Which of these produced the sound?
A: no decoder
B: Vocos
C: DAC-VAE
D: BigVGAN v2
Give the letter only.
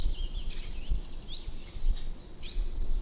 D